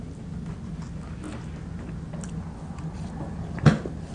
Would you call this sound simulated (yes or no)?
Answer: no